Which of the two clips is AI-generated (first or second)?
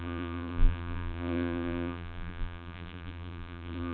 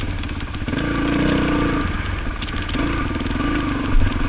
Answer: first